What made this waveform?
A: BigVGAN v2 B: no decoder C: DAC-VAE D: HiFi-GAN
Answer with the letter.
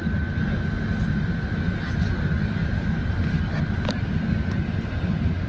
B